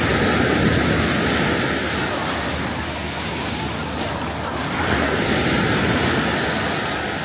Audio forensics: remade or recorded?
recorded